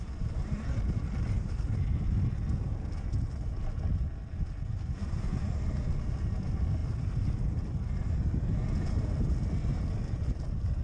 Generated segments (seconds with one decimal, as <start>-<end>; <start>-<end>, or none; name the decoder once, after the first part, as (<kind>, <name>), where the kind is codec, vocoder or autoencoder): none